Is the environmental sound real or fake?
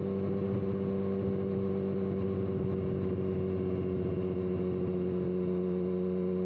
real